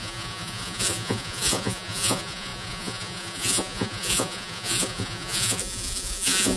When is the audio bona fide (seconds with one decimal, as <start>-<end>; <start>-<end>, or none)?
none